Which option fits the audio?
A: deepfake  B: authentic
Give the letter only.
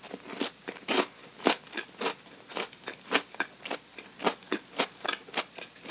B